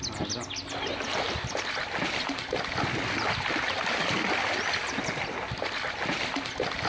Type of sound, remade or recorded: recorded